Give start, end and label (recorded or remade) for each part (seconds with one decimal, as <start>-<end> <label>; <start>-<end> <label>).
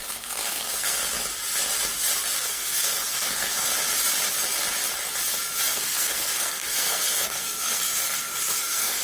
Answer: 0.0-1.0 remade; 1.0-2.4 recorded; 2.4-3.7 remade; 3.7-5.7 recorded; 5.7-9.0 remade